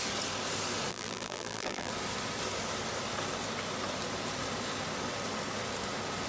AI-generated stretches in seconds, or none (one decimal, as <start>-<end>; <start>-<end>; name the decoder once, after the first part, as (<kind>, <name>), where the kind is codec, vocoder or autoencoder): 0.9-1.9 (vocoder, BigVGAN v2)